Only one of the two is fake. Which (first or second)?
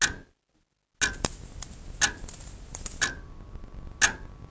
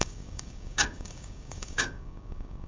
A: second